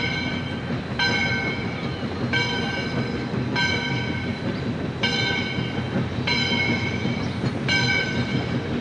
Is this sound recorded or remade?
recorded